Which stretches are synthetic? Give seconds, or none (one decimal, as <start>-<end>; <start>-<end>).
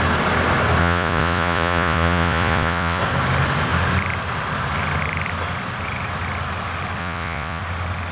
0.8-3.0; 7.0-7.6